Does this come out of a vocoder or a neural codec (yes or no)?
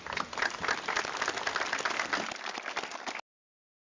no